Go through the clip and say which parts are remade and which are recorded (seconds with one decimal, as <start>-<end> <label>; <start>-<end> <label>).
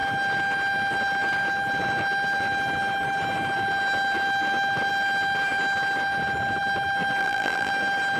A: 0.0-7.2 recorded; 7.2-7.7 remade; 7.7-8.2 recorded